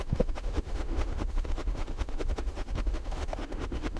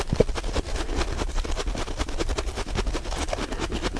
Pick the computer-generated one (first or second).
first